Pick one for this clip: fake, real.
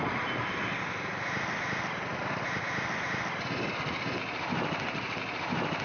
real